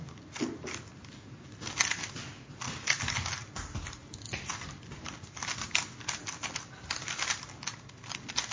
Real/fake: real